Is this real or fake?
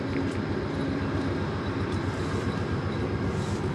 real